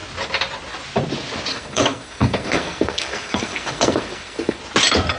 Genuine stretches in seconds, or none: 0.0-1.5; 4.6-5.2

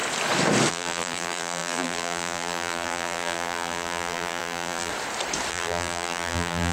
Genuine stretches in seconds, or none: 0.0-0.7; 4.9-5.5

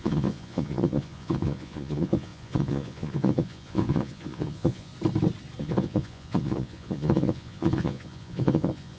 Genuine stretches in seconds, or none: 4.9-5.6

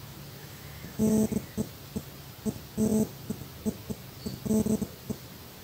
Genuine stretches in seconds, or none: 0.0-0.4; 1.1-5.6